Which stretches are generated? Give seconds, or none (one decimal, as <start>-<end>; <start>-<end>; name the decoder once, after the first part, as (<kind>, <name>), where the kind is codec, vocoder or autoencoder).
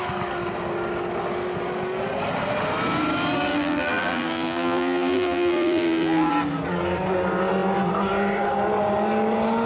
3.5-6.3 (vocoder, BigVGAN v2)